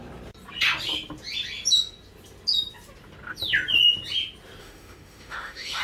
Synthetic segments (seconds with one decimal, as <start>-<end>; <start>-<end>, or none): 4.6-5.8